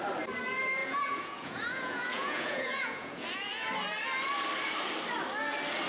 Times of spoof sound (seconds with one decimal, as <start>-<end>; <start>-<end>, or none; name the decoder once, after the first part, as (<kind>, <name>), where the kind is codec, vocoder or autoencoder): 0.8-3.7 (vocoder, Vocos)